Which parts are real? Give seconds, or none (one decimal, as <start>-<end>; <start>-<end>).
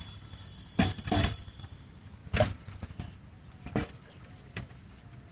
0.0-5.3